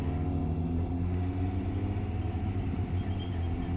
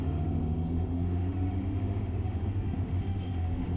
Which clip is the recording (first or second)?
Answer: first